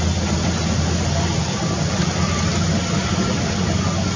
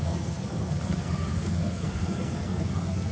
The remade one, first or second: second